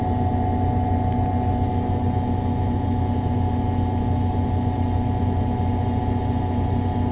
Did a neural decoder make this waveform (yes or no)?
no